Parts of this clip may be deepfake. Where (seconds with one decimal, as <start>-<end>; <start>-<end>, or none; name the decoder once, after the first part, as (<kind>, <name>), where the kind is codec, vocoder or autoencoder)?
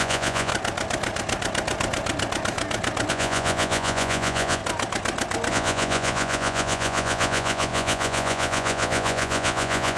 0.0-0.5 (vocoder, Vocos); 3.1-4.6; 5.5-10.0